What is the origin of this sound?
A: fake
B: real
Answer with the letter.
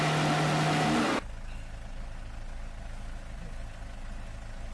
B